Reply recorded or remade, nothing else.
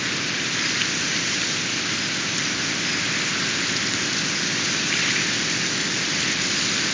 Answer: remade